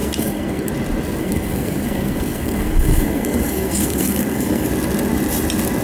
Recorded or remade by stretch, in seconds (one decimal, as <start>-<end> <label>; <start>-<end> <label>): 0.0-0.7 remade; 0.7-1.2 recorded; 1.2-4.7 remade; 4.7-5.8 recorded